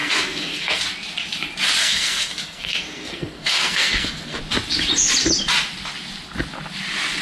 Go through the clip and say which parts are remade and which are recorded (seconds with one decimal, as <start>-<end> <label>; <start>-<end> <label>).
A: 0.0-0.8 remade; 0.8-1.8 recorded; 1.8-4.4 remade; 4.4-7.2 recorded